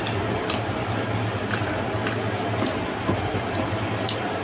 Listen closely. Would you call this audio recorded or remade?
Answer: recorded